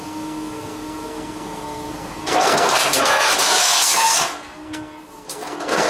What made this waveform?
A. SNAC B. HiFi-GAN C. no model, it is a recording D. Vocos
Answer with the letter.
A